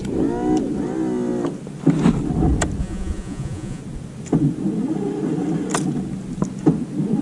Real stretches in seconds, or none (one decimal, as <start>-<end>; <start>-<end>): 0.0-2.8; 3.8-7.2